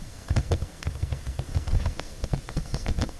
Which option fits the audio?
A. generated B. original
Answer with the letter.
A